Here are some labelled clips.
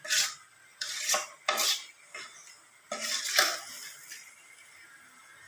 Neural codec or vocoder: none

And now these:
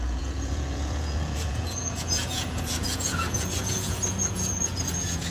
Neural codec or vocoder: vocoder, Vocos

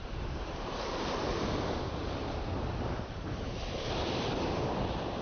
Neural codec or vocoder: vocoder, BigVGAN v2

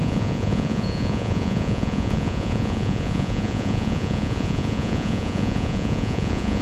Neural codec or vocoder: vocoder, Vocos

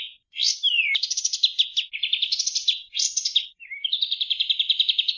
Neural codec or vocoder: none